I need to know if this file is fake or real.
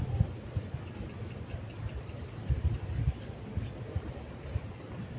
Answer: real